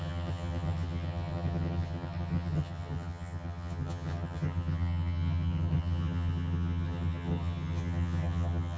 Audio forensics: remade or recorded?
remade